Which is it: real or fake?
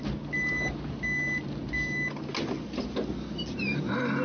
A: real